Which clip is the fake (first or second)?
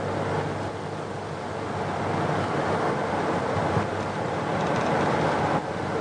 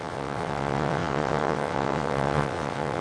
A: second